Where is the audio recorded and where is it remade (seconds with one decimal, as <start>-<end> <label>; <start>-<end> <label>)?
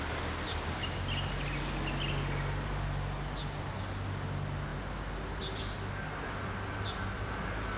0.0-7.8 recorded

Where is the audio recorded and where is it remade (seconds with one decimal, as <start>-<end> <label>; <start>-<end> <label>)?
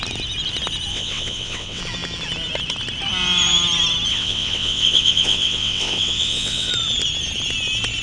0.0-0.9 recorded; 0.9-1.8 remade; 1.8-4.1 recorded; 4.1-6.7 remade; 6.7-8.0 recorded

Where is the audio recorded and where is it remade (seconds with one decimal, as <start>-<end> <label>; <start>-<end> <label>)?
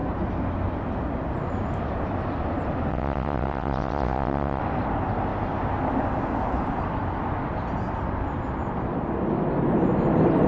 0.0-2.9 recorded; 2.9-4.6 remade; 4.6-10.5 recorded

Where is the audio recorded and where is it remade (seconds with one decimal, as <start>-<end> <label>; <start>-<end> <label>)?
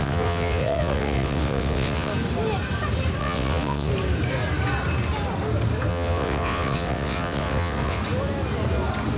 0.0-2.1 remade; 2.1-3.2 recorded; 3.2-3.9 remade; 3.9-5.9 recorded; 5.9-8.0 remade; 8.0-9.2 recorded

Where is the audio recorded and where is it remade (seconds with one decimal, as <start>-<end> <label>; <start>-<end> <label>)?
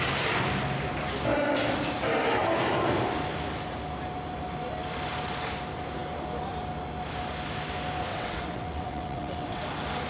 0.0-8.1 recorded; 8.1-9.6 remade; 9.6-10.1 recorded